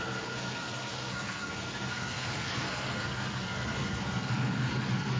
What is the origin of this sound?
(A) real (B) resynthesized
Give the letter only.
B